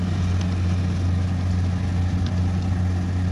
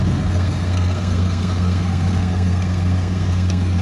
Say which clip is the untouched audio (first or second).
first